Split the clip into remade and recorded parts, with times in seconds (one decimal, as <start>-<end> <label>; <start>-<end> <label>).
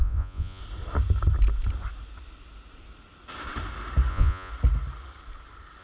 0.0-0.6 remade; 0.6-4.1 recorded; 4.1-4.5 remade; 4.5-5.8 recorded